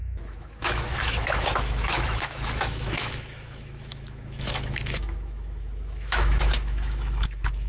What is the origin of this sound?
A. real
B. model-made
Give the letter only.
B